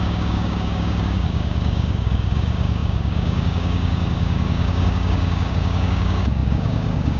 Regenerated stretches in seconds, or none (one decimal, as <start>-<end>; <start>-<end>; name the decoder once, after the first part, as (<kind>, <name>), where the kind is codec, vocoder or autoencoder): 0.0-7.2 (codec, DAC)